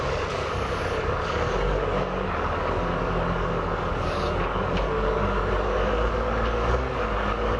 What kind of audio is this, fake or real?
fake